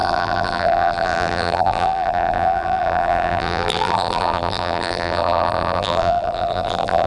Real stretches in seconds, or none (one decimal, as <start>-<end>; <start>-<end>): none